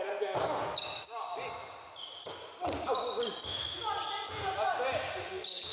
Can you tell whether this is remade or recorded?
recorded